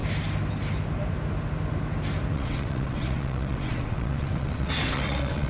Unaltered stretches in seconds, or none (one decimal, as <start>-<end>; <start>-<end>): 0.0-2.3